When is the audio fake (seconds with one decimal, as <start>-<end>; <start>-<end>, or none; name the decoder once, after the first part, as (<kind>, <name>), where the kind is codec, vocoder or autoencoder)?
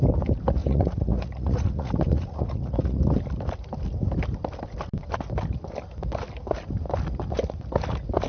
0.6-3.0 (vocoder, Vocos)